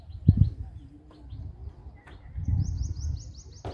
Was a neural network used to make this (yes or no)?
no